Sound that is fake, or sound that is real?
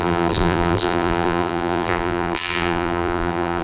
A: fake